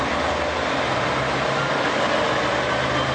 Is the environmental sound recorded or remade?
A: recorded